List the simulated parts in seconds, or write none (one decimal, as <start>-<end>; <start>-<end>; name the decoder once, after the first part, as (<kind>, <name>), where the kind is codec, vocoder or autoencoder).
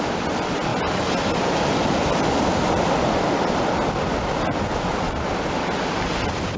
none